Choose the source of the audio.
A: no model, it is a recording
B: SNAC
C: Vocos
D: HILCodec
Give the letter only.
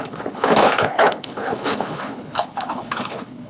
D